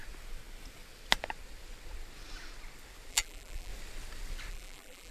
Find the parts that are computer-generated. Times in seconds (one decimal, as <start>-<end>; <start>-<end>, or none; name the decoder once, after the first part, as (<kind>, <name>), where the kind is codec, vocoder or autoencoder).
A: 3.1-3.7 (vocoder, BigVGAN v2); 4.5-5.1